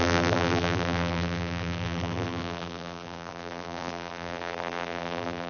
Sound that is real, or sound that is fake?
fake